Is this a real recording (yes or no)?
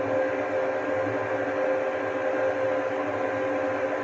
yes